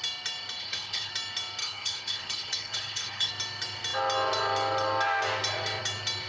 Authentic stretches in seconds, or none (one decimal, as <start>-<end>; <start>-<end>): 0.0-0.6; 1.1-1.6; 3.3-6.3

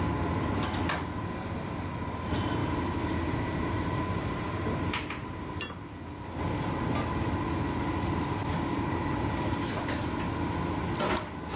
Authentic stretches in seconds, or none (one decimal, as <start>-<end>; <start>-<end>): 0.0-2.6; 5.8-8.4; 10.0-11.6

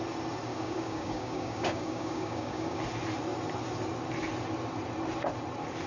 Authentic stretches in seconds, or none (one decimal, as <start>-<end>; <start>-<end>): 0.0-0.5; 2.8-5.9

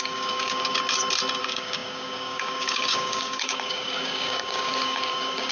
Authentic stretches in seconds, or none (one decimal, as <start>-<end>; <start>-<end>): 0.7-1.4

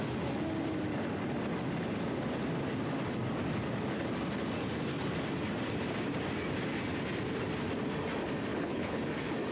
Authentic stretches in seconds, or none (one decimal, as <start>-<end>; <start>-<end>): 0.0-8.5; 9.0-9.5

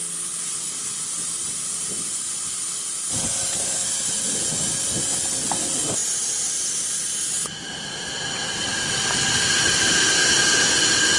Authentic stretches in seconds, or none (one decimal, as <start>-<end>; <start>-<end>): 0.0-11.2